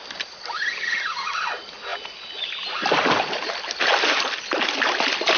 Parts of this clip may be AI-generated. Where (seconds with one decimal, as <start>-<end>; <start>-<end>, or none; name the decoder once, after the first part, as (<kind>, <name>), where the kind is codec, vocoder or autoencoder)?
none